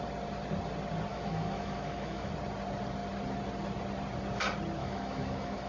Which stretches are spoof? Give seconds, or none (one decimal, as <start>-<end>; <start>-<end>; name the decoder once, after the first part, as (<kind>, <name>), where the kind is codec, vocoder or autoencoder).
1.1-2.3 (autoencoder, DAC-VAE); 4.8-5.7